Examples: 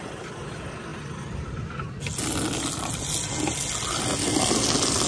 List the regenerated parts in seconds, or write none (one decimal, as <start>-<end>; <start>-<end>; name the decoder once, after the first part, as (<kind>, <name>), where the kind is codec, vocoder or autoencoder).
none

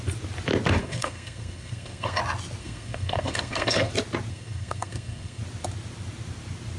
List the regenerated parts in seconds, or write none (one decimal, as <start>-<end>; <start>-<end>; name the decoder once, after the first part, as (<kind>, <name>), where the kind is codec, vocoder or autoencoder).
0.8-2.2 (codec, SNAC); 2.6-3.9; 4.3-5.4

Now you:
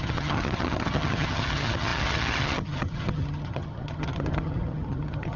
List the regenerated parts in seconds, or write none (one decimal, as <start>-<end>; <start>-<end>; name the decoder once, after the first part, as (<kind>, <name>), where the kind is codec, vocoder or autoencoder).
0.0-5.4 (vocoder, HiFi-GAN)